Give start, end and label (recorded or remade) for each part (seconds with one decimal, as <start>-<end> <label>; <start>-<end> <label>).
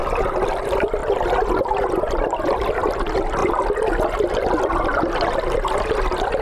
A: 0.0-0.6 recorded; 0.6-1.0 remade; 1.0-2.0 recorded; 2.0-3.4 remade; 3.4-4.6 recorded; 4.6-6.4 remade